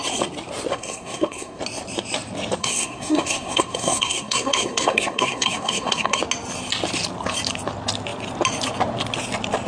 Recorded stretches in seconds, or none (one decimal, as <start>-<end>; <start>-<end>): 0.0-0.7; 1.6-2.6; 6.2-9.7

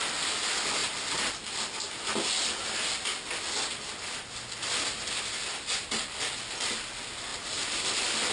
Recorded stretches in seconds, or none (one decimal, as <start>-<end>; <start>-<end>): 0.0-8.3

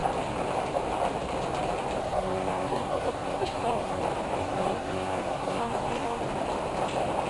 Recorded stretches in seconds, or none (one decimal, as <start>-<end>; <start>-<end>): 0.0-2.0; 4.0-4.4; 6.2-7.3

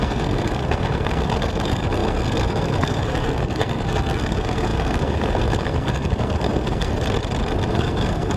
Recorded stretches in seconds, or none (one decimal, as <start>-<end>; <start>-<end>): 6.9-7.7

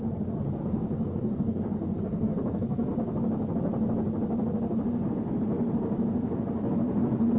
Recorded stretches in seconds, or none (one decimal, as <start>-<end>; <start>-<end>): 0.0-0.6; 2.9-7.4

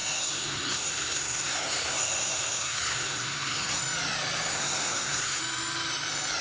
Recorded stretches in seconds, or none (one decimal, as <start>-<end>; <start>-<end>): 3.8-4.5; 5.4-6.4